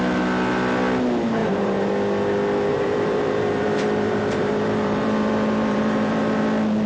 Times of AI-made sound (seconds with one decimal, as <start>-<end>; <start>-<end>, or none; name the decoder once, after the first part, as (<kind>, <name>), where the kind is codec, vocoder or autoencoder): 1.4-1.9 (vocoder, BigVGAN v2); 2.7-6.4